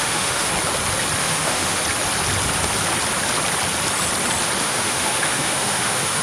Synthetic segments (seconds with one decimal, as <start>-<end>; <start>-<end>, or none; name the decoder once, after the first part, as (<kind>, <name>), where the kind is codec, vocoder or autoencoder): 0.0-0.5 (autoencoder, DAC-VAE); 1.2-1.8; 4.6-6.2